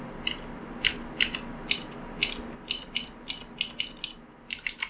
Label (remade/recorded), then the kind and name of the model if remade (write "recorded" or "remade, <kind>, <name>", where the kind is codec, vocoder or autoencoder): recorded